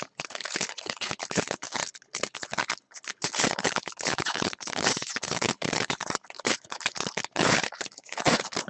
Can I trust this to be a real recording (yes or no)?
no